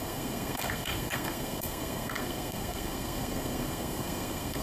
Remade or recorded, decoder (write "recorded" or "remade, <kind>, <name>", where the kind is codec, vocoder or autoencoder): remade, codec, SNAC